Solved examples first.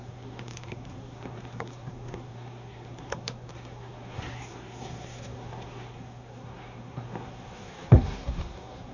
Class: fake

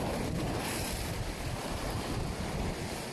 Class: real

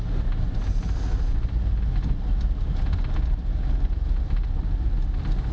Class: real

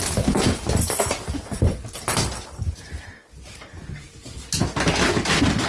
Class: real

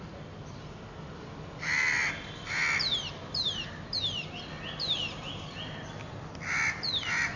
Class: real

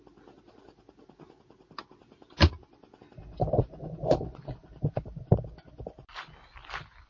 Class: real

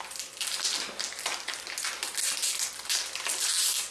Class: real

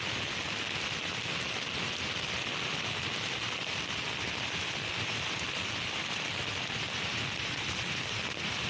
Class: real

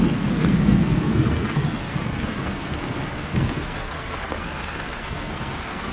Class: fake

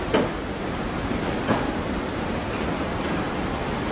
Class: real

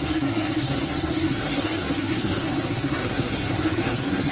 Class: fake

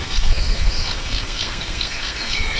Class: fake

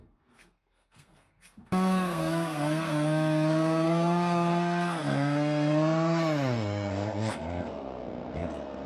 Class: fake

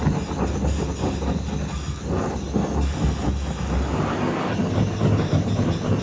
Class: real